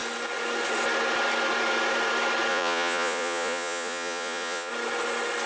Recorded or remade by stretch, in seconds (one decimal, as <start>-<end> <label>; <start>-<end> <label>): 0.0-2.5 recorded; 2.5-4.7 remade; 4.7-5.5 recorded